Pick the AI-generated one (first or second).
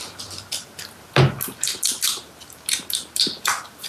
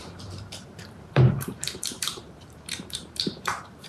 second